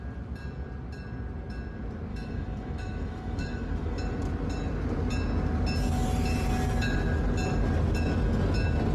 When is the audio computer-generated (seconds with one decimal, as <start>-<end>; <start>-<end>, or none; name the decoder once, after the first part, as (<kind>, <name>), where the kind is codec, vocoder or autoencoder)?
2.1-4.0 (autoencoder, DAC-VAE)